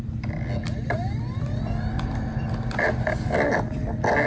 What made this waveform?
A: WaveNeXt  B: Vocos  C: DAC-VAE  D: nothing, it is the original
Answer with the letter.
D